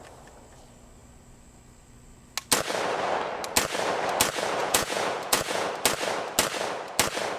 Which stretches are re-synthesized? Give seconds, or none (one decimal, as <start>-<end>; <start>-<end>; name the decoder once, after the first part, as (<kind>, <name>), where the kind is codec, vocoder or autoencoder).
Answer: 4.6-5.7 (vocoder, Vocos)